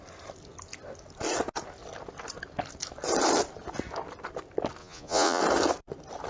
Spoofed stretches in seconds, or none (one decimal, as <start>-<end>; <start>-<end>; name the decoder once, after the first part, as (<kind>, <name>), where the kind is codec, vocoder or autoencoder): 4.8-5.4 (vocoder, Vocos)